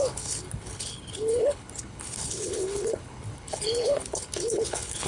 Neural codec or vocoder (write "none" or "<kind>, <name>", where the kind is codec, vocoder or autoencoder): codec, HILCodec